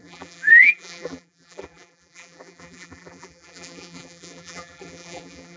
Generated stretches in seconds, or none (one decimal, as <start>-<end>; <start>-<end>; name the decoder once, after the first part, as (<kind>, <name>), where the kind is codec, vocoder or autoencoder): 0.0-5.6 (vocoder, BigVGAN v2)